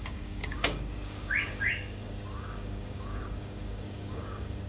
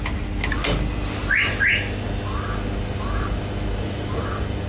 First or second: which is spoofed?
first